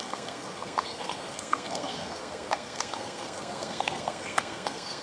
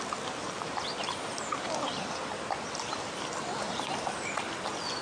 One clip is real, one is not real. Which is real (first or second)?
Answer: second